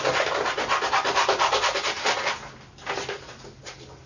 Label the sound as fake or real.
real